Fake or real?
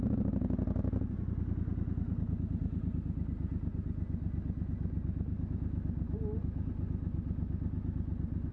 real